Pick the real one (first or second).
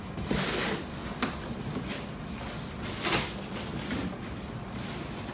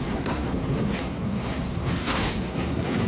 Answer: first